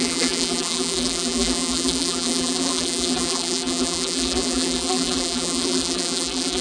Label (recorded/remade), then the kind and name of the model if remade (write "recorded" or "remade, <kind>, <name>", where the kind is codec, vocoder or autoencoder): remade, vocoder, BigVGAN v2